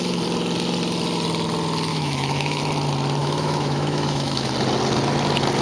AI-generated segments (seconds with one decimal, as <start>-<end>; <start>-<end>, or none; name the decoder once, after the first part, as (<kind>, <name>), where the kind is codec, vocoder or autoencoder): 1.9-2.6 (autoencoder, DAC-VAE); 3.2-4.5